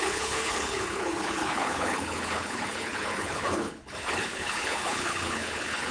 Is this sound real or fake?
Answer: fake